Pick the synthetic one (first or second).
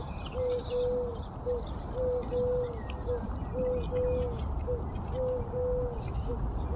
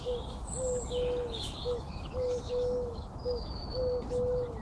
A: second